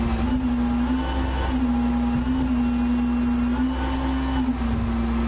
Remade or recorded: recorded